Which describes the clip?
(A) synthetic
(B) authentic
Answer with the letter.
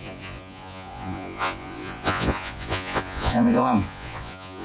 A